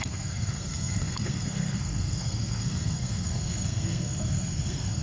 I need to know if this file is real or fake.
fake